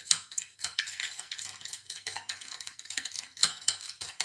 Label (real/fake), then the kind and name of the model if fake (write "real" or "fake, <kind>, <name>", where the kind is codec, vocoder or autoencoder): fake, codec, SNAC